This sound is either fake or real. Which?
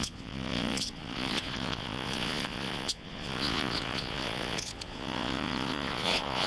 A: fake